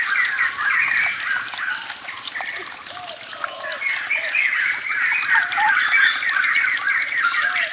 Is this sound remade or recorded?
recorded